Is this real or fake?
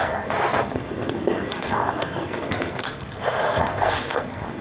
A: fake